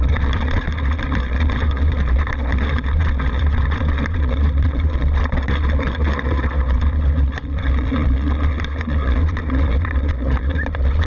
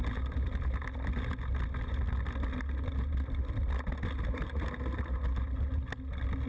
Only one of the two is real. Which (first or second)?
second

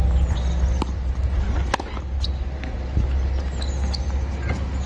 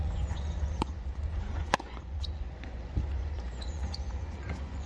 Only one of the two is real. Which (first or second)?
first